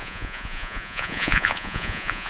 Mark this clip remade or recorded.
remade